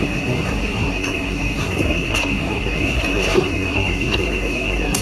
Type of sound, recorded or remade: remade